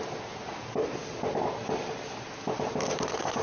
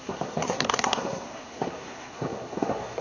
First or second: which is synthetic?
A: second